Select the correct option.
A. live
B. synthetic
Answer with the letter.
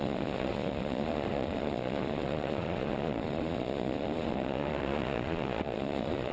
B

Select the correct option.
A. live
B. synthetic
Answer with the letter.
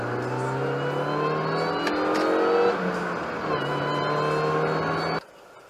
A